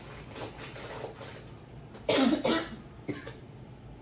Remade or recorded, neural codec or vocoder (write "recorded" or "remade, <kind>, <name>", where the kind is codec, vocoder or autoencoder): recorded